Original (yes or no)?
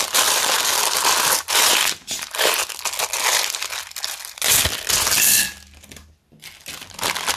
yes